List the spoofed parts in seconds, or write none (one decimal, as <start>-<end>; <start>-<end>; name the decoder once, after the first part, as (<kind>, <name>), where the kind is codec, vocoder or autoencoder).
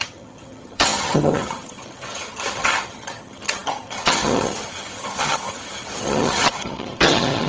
0.0-7.5 (vocoder, HiFi-GAN)